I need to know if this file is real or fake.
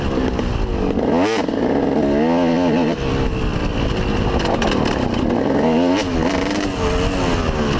real